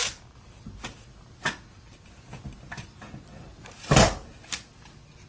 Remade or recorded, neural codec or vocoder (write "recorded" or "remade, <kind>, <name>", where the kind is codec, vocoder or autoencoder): recorded